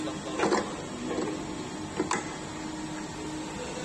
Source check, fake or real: real